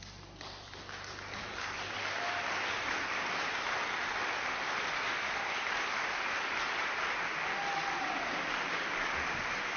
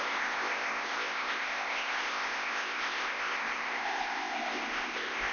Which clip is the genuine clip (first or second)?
first